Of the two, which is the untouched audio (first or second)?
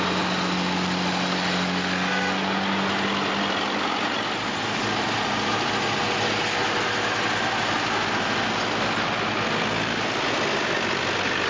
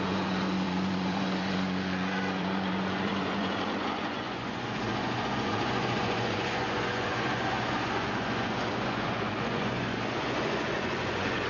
first